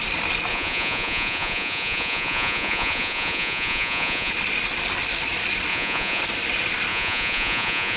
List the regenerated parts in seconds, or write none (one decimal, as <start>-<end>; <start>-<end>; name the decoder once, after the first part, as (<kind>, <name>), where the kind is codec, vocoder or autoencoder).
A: 0.5-4.3 (vocoder, Vocos); 5.7-6.2; 6.9-8.0